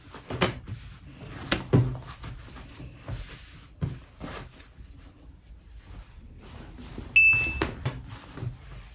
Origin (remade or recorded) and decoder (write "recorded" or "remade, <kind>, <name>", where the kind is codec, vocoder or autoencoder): recorded